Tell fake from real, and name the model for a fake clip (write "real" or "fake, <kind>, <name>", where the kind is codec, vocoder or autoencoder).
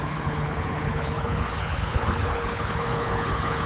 fake, codec, HILCodec